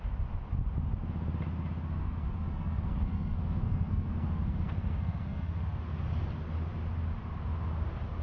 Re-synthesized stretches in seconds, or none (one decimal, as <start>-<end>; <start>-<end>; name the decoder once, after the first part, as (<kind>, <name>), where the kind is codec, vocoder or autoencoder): 2.0-5.8 (codec, SNAC)